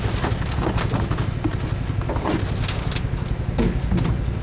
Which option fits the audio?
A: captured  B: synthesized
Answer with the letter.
A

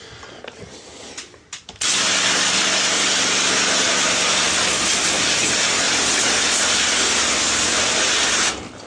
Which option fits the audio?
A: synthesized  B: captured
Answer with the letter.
B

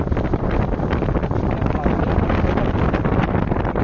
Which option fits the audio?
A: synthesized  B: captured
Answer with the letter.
B